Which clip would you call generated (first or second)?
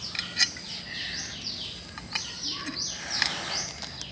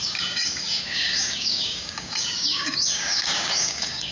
second